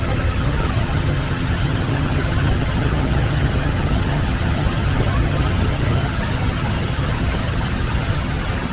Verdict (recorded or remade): remade